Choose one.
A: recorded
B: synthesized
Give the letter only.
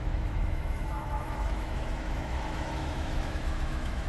B